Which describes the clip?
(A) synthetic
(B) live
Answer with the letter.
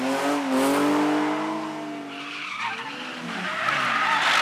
B